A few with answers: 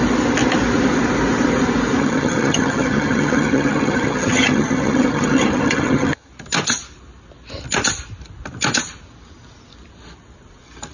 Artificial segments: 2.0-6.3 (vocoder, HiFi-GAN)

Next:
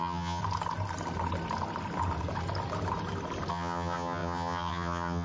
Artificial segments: 0.0-0.4 (vocoder, HiFi-GAN); 3.5-5.2

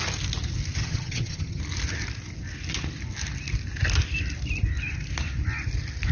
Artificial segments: 0.8-1.6 (vocoder, HiFi-GAN)

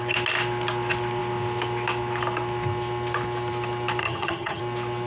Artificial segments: 4.0-4.6 (vocoder, HiFi-GAN)